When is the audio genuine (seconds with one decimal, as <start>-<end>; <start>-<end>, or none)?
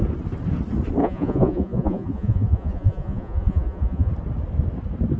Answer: 0.0-1.0; 4.1-5.2